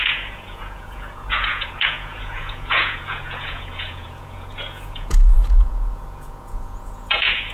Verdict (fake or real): fake